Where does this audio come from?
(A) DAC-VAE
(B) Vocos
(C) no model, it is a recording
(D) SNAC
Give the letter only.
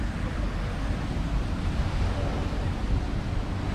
C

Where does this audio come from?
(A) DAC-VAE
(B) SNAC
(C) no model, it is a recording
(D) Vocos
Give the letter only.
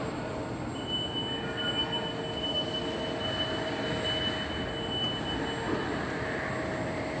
C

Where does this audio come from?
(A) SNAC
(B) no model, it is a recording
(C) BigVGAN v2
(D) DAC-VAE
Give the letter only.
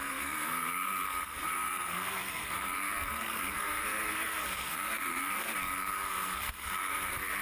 A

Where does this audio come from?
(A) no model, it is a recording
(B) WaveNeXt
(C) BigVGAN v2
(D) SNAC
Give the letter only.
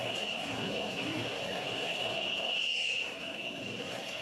D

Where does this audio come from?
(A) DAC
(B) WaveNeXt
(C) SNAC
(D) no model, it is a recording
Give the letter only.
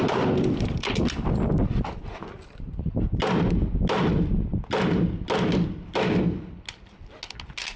D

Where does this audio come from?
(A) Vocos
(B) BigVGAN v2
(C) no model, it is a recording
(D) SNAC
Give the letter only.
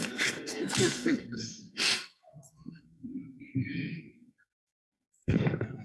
D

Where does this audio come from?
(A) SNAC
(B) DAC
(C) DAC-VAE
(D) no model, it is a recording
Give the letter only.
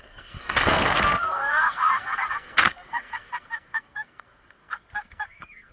A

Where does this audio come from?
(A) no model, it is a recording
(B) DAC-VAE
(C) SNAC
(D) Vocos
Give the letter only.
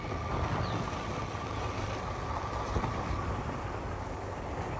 A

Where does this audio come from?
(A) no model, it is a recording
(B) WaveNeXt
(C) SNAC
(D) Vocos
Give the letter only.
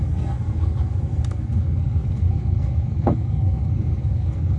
C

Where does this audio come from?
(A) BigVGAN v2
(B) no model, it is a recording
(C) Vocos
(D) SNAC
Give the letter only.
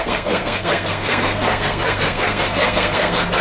D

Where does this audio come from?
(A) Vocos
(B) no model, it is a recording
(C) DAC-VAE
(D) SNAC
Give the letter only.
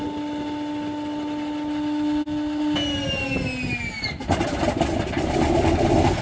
B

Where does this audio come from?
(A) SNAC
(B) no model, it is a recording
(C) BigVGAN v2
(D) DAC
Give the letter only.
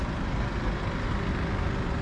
B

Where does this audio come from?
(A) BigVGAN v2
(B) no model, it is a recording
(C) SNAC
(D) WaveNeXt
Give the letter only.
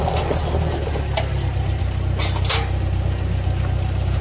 B